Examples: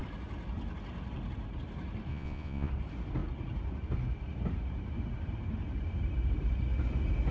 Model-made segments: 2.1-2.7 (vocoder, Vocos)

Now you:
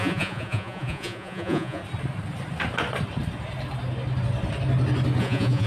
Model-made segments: 0.0-1.8 (vocoder, Vocos); 5.2-5.7